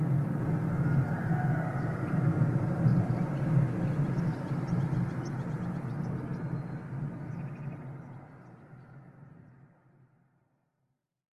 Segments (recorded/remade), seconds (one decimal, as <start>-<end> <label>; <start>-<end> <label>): 0.0-11.3 recorded

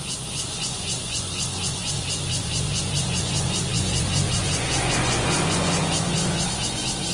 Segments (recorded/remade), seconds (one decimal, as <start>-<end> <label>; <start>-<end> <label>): 0.0-7.1 remade

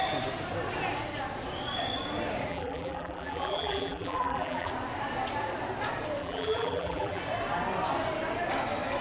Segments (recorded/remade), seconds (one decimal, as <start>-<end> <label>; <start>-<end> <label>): 0.0-2.5 recorded; 2.5-4.7 remade; 4.7-6.2 recorded; 6.2-7.2 remade; 7.2-9.0 recorded

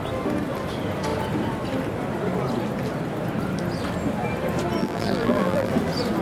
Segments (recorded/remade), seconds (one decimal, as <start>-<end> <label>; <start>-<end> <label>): 0.0-4.8 recorded; 4.8-5.7 remade; 5.7-6.2 recorded

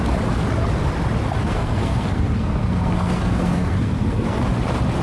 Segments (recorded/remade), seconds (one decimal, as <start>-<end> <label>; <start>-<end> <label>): 0.0-1.4 recorded; 1.4-4.4 remade; 4.4-5.0 recorded

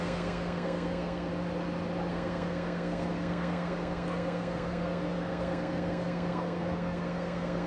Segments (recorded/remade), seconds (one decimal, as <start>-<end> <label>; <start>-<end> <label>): 0.0-1.3 remade; 1.3-2.1 recorded; 2.1-7.7 remade